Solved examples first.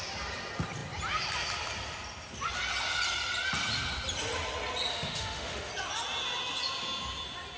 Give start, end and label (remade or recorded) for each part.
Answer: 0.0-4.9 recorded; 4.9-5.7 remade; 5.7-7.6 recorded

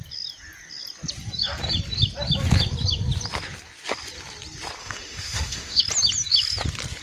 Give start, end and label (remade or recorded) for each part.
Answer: 0.0-4.8 recorded; 4.8-5.8 remade; 5.8-7.0 recorded

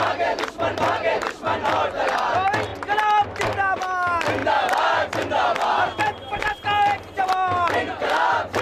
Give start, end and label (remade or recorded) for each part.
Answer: 0.0-8.6 recorded

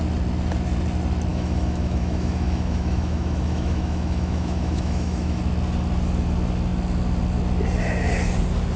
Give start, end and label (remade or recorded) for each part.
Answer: 0.0-1.3 recorded; 1.3-5.4 remade; 5.4-8.8 recorded

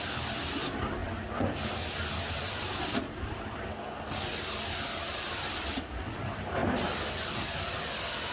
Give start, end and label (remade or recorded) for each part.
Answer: 0.0-8.3 recorded